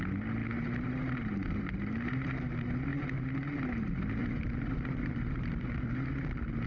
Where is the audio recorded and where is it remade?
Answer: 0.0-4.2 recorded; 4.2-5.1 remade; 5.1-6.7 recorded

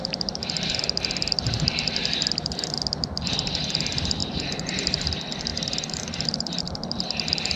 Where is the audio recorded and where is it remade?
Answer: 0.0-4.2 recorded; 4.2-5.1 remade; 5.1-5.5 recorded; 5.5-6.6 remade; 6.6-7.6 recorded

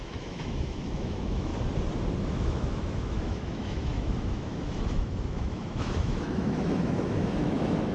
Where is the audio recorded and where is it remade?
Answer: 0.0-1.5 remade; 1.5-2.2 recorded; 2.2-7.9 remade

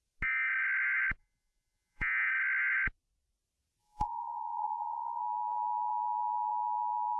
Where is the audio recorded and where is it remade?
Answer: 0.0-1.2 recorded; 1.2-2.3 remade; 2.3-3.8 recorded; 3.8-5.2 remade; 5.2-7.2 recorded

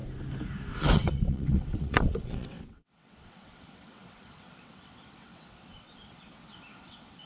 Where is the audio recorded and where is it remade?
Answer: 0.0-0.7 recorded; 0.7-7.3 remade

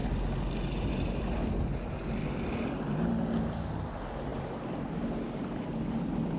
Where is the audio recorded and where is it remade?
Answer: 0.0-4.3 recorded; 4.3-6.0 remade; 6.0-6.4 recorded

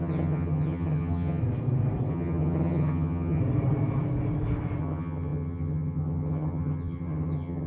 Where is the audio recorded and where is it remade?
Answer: 0.0-1.4 remade; 1.4-2.1 recorded; 2.1-3.4 remade; 3.4-4.8 recorded; 4.8-7.7 remade

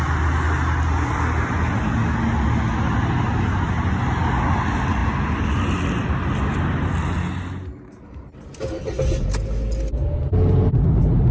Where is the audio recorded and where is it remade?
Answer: 0.0-11.3 recorded